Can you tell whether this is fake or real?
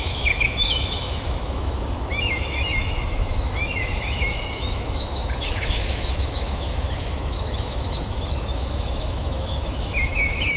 fake